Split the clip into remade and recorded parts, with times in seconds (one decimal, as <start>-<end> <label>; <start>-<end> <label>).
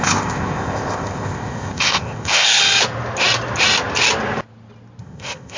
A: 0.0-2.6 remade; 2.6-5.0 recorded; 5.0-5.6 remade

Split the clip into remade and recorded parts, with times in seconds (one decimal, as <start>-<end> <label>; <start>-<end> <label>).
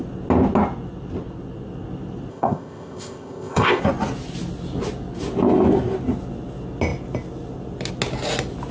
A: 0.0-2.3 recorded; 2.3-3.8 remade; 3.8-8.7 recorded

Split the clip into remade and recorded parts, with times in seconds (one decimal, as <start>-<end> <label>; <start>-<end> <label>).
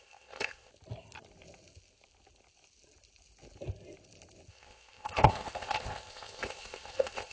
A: 0.0-0.7 remade; 0.7-4.5 recorded; 4.5-7.3 remade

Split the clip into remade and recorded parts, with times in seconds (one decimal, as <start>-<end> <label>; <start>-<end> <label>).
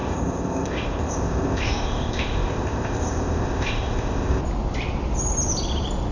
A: 0.0-4.4 remade; 4.4-6.1 recorded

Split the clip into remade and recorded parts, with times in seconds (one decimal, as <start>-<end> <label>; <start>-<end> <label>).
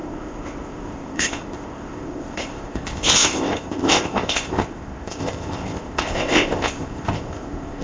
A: 0.0-7.8 remade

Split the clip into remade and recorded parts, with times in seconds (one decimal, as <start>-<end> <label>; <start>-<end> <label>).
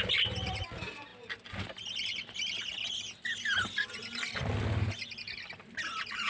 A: 0.0-6.3 recorded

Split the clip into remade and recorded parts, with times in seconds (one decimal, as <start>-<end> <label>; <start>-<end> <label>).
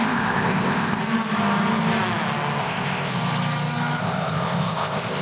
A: 0.0-1.0 remade; 1.0-2.6 recorded; 2.6-3.1 remade; 3.1-4.0 recorded; 4.0-5.2 remade